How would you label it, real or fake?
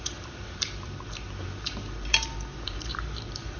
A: fake